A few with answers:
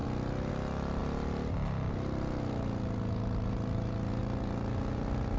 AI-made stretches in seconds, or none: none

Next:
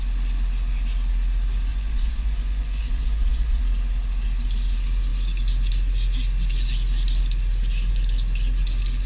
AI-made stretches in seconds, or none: 1.7-3.6 (vocoder, Vocos)

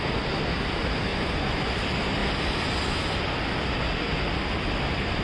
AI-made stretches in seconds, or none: 1.1-1.7 (vocoder, Vocos)

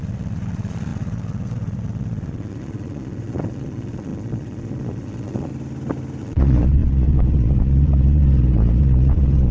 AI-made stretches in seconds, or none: 0.0-5.5 (vocoder, Vocos); 6.2-9.5